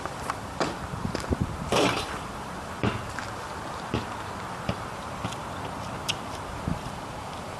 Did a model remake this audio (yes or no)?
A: yes